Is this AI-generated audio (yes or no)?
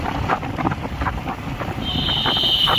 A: yes